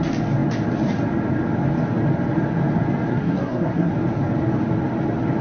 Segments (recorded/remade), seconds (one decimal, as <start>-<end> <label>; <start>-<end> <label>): 0.0-3.1 recorded; 3.1-3.9 remade; 3.9-5.4 recorded